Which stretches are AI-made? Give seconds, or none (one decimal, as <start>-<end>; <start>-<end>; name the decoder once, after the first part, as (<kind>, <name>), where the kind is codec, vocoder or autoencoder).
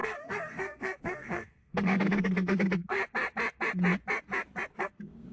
0.0-3.0 (codec, SNAC); 4.8-5.3